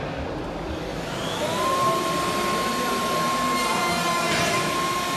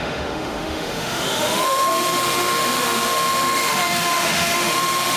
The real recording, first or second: first